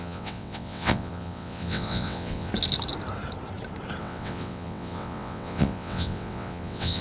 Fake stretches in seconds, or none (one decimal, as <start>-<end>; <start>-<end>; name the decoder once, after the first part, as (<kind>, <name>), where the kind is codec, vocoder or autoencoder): 0.0-2.5 (vocoder, WaveNeXt); 4.0-7.0